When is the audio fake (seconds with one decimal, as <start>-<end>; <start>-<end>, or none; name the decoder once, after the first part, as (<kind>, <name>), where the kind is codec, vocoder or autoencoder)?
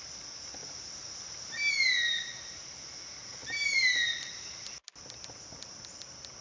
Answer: 0.6-1.7 (vocoder, BigVGAN v2); 3.4-4.7